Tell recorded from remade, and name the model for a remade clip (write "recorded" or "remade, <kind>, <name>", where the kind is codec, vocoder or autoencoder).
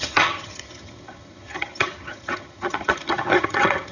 remade, vocoder, HiFi-GAN